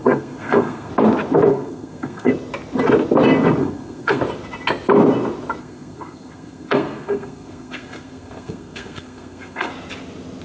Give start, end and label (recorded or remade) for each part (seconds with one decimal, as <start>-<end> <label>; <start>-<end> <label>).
0.0-0.9 remade; 0.9-1.5 recorded; 1.5-2.3 remade; 2.3-3.6 recorded; 3.6-4.2 remade; 4.2-5.6 recorded; 5.6-9.7 remade; 9.7-10.4 recorded